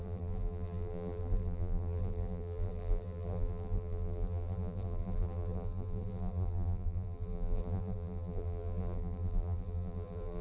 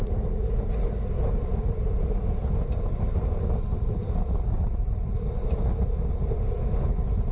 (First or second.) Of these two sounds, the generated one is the first